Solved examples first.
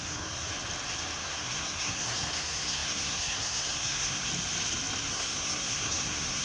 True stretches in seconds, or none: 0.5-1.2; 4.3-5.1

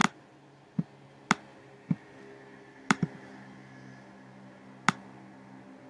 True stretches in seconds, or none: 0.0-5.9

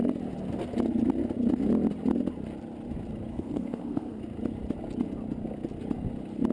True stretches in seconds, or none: 0.0-3.3; 4.2-6.5

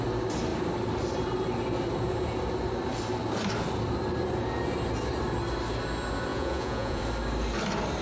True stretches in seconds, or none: 0.0-6.3; 7.0-8.0

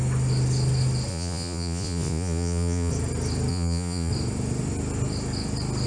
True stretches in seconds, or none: 0.0-1.1; 2.9-3.5; 4.1-5.9

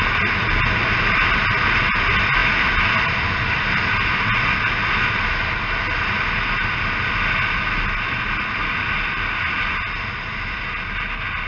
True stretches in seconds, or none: 0.0-11.5